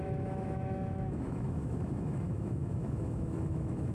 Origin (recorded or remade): remade